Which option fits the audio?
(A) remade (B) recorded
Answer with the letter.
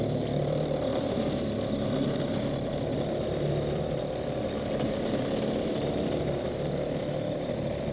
B